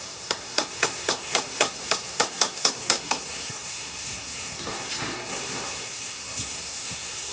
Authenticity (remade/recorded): remade